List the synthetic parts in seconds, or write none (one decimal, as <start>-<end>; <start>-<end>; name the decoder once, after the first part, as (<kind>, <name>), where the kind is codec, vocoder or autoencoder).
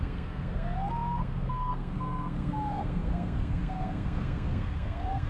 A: 0.0-5.3 (codec, SNAC)